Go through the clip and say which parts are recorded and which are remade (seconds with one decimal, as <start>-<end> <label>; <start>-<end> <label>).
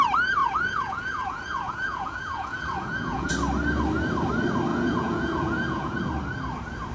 0.0-0.4 recorded; 0.4-3.3 remade; 3.3-4.7 recorded; 4.7-6.0 remade; 6.0-6.9 recorded